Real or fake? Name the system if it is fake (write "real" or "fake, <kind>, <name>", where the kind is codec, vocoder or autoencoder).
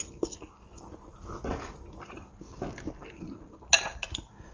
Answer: real